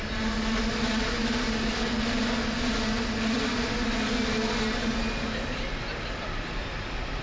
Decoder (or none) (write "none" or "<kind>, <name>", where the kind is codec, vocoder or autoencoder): none